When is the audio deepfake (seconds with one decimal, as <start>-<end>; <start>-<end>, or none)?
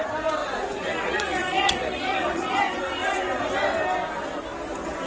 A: 0.4-2.6